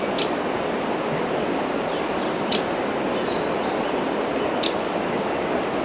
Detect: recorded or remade recorded